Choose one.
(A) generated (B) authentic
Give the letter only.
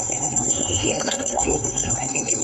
A